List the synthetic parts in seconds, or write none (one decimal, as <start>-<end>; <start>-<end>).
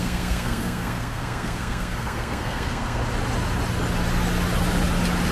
0.0-3.0